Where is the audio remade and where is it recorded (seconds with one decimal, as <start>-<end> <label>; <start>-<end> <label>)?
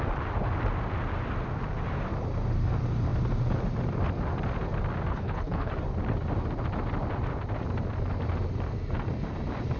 0.0-5.1 recorded; 5.1-5.7 remade; 5.7-9.8 recorded